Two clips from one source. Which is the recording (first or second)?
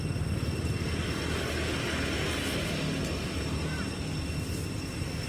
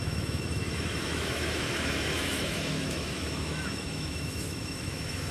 first